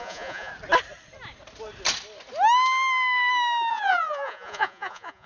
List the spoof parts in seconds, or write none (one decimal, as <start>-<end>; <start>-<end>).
0.0-0.5; 3.7-5.3